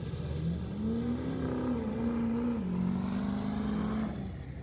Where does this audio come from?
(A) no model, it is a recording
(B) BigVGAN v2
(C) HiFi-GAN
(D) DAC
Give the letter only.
A